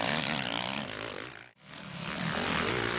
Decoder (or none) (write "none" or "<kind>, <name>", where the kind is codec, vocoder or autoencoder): none